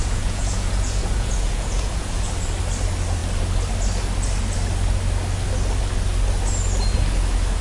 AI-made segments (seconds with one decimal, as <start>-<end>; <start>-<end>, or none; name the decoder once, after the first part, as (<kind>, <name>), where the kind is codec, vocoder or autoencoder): 0.0-2.3 (vocoder, Vocos)